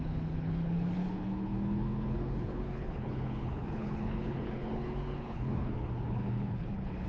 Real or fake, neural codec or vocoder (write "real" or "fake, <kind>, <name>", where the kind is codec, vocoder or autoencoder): fake, codec, HILCodec